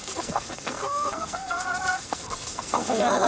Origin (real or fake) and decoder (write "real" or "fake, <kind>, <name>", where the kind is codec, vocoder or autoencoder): fake, codec, SNAC